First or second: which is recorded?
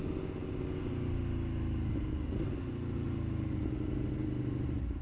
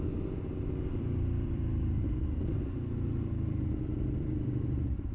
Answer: first